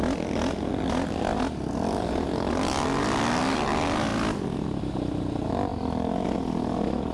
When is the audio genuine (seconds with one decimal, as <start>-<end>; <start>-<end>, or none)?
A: 0.0-7.1